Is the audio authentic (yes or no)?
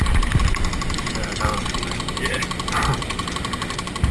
yes